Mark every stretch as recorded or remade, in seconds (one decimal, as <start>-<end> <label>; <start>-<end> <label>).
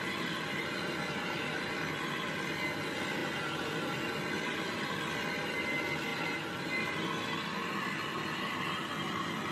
0.0-9.5 recorded